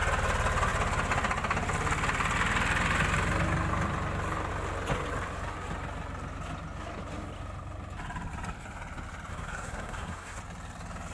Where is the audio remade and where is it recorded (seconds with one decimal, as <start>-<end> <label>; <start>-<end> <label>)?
0.0-9.3 recorded; 9.3-10.4 remade; 10.4-11.1 recorded